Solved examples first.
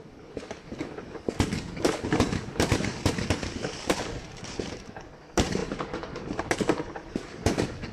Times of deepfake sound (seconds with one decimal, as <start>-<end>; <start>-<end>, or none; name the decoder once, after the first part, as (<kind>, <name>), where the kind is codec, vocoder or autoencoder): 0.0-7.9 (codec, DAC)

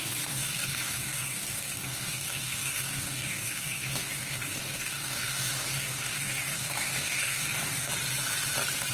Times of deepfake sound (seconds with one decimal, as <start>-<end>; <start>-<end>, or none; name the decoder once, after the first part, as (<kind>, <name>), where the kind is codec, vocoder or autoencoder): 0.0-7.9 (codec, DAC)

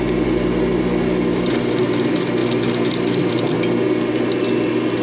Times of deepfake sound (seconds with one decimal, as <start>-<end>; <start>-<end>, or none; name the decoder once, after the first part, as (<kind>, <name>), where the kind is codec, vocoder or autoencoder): none

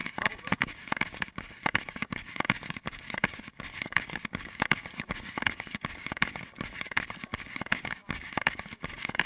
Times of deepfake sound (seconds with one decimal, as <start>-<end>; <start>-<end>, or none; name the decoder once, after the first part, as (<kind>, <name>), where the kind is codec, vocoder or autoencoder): 0.0-9.3 (codec, DAC)